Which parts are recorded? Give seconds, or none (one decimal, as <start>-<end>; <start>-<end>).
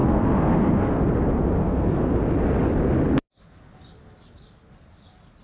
1.0-1.6; 2.2-5.4